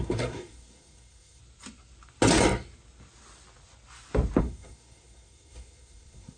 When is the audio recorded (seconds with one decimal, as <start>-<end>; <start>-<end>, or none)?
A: 1.4-4.4